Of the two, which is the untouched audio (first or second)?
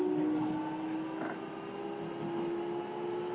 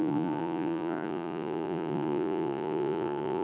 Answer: first